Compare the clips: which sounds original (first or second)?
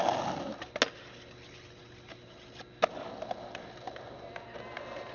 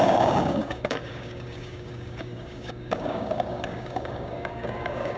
first